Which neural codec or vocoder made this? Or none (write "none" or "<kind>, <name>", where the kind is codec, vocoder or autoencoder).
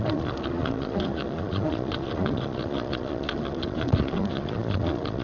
vocoder, Vocos